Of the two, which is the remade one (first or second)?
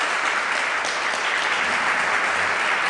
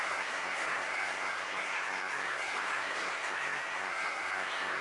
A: second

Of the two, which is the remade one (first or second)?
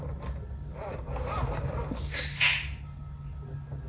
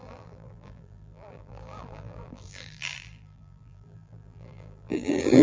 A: second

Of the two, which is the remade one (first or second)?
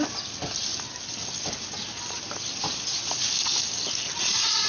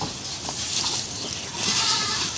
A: second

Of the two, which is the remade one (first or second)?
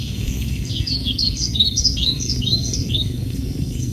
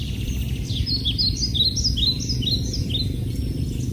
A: first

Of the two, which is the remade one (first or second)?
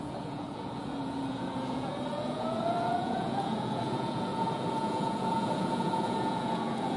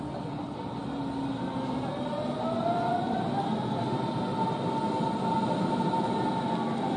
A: first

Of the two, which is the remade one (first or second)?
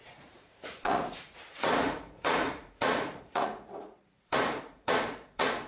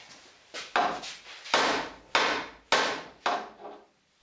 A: first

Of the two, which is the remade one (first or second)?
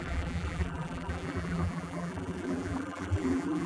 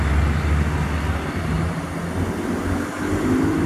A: first